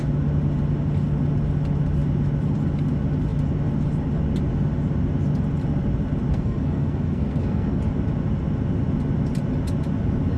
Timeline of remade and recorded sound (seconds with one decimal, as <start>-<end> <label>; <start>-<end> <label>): 0.0-6.3 recorded; 6.3-7.8 remade; 7.8-10.4 recorded